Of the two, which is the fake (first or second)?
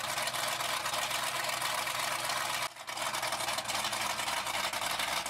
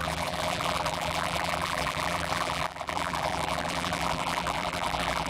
second